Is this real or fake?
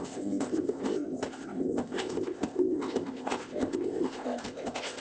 fake